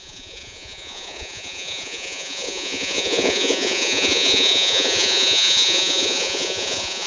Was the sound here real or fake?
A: fake